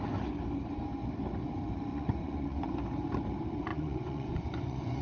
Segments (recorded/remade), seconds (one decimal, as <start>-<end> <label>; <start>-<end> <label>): 0.0-1.9 recorded; 1.9-2.7 remade; 2.7-3.7 recorded; 3.7-5.0 remade